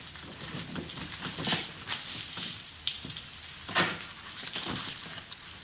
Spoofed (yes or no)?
no